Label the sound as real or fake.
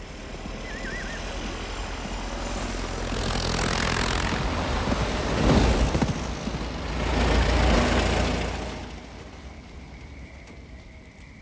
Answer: real